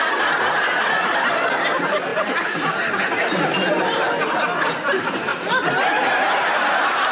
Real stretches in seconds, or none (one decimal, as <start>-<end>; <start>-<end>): 0.0-7.1